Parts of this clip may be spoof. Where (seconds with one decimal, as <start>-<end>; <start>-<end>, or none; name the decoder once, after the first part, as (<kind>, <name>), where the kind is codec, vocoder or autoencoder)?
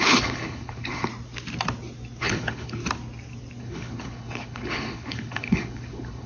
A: 0.0-1.1 (codec, HILCodec); 2.2-2.8; 3.6-6.3